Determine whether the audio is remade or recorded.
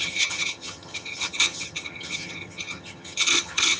remade